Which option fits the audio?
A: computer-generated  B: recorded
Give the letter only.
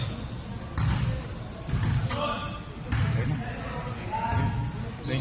B